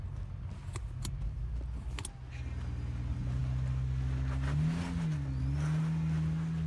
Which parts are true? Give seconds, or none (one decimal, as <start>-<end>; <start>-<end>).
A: 0.0-6.7